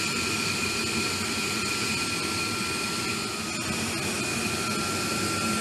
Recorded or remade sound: recorded